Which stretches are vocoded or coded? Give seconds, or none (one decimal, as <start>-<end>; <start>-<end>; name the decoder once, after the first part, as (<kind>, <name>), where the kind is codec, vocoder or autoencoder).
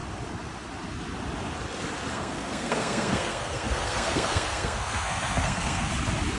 2.1-5.9 (codec, SNAC)